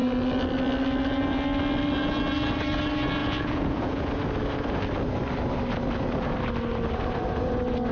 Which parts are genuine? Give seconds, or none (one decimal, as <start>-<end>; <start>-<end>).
0.0-3.2; 4.1-7.9